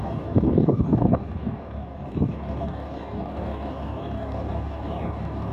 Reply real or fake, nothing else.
fake